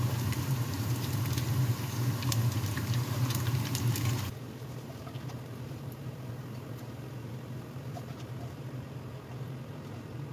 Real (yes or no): no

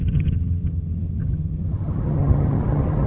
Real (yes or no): no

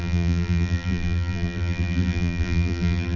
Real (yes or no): no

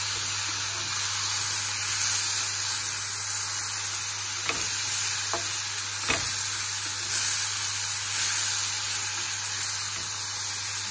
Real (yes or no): yes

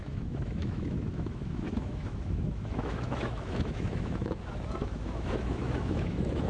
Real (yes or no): no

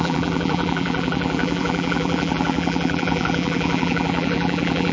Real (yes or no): no